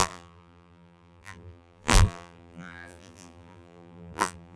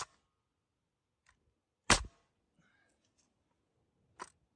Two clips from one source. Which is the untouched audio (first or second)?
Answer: second